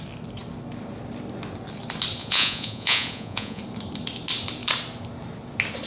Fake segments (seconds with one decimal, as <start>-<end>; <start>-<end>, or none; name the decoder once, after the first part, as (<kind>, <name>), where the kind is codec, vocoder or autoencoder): 2.2-3.6 (vocoder, Vocos)